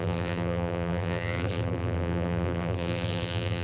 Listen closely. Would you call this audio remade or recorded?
remade